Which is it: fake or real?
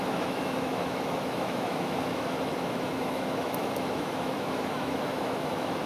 fake